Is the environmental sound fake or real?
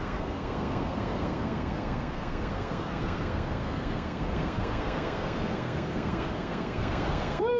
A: fake